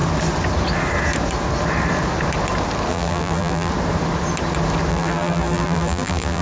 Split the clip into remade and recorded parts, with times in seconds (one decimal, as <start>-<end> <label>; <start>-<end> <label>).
0.0-2.9 recorded; 2.9-3.7 remade; 3.7-4.9 recorded; 4.9-6.4 remade